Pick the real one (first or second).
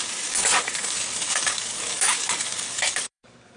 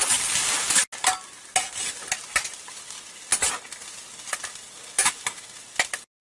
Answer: second